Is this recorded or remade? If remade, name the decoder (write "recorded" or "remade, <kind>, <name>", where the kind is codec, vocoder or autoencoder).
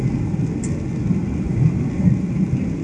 recorded